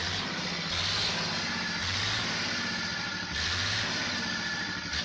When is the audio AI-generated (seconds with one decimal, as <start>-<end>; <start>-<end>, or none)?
none